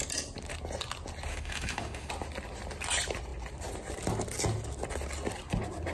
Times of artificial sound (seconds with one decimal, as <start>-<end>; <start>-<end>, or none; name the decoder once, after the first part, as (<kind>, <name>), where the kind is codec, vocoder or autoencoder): 1.3-2.1 (autoencoder, DAC-VAE)